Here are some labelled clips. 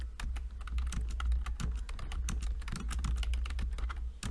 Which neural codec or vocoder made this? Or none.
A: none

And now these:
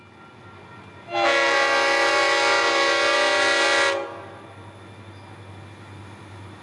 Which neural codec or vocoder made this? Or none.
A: none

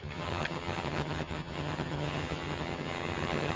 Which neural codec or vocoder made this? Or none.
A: vocoder, HiFi-GAN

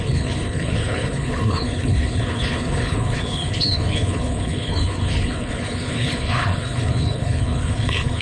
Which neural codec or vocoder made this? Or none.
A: codec, HILCodec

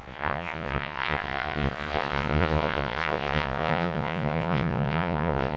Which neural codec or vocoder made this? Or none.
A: vocoder, Vocos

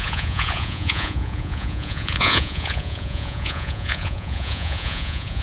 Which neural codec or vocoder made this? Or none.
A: vocoder, Vocos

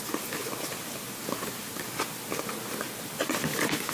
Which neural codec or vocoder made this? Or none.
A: none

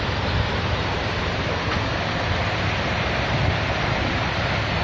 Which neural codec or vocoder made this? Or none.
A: none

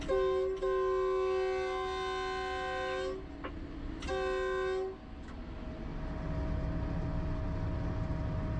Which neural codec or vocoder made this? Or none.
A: none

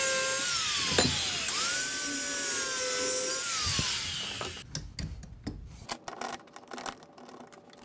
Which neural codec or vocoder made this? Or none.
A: none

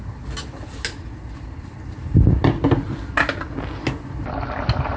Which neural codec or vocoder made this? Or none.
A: none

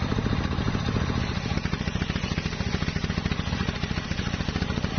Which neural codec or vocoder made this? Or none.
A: none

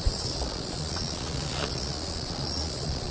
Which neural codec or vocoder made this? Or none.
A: vocoder, Vocos